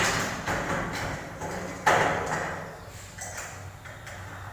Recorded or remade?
recorded